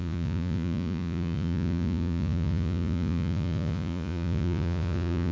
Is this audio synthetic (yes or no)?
yes